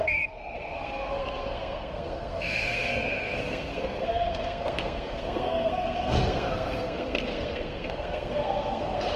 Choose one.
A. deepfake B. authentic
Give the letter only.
A